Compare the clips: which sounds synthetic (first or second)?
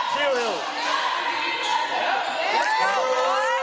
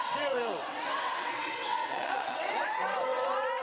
second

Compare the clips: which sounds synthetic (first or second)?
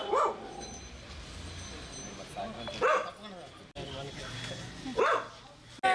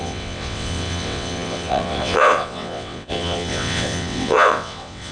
second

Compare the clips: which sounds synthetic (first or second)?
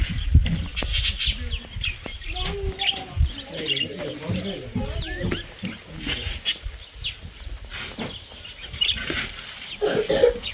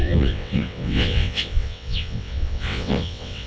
second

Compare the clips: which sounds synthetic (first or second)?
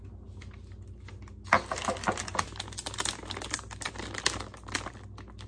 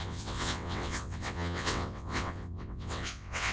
second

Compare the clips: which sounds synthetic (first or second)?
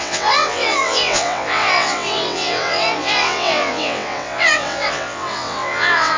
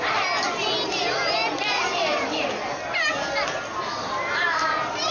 first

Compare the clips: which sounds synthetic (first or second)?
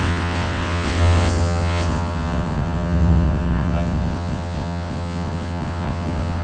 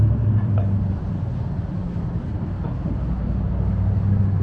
first